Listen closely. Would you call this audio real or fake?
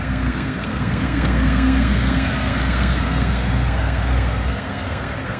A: fake